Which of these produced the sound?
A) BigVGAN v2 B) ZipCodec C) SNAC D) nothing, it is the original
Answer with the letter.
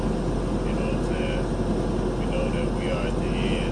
D